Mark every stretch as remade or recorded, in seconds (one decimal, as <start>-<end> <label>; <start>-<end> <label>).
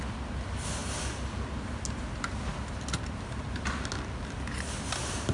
0.0-5.3 recorded